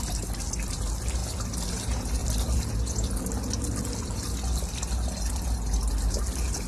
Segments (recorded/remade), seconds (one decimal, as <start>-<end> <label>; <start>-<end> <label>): 0.0-2.2 recorded; 2.2-2.7 remade; 2.7-6.7 recorded

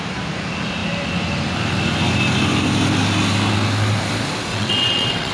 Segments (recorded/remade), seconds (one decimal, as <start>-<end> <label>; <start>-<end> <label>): 0.0-4.5 recorded; 4.5-5.3 remade

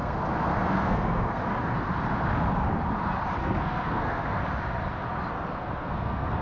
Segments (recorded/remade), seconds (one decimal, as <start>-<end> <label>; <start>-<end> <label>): 0.0-1.4 remade; 1.4-3.4 recorded; 3.4-4.4 remade; 4.4-5.6 recorded; 5.6-6.4 remade

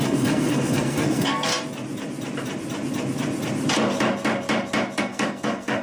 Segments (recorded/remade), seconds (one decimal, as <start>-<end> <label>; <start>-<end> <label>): 0.0-1.5 remade; 1.5-5.0 recorded; 5.0-5.8 remade

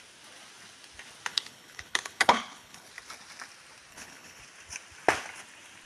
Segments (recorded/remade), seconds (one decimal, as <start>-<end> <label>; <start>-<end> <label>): 0.0-1.3 recorded; 1.3-2.9 remade; 2.9-3.9 recorded; 3.9-4.4 remade; 4.4-5.9 recorded

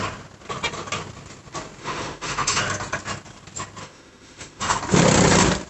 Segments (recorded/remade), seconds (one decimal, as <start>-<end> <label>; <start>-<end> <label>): 0.0-1.8 recorded; 1.8-2.6 remade; 2.6-3.8 recorded; 3.8-4.8 remade; 4.8-5.7 recorded

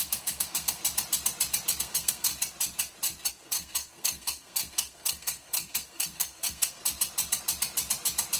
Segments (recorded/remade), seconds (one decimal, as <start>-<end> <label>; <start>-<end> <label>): 0.0-0.8 remade; 0.8-1.8 recorded; 1.8-2.3 remade; 2.3-3.3 recorded; 3.3-6.8 remade; 6.8-8.4 recorded